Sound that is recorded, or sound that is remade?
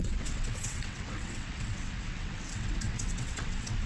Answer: remade